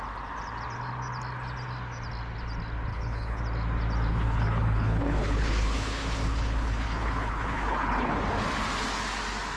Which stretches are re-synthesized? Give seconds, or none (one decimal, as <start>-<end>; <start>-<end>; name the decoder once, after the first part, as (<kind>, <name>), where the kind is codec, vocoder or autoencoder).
2.9-3.4 (codec, HILCodec); 4.1-8.1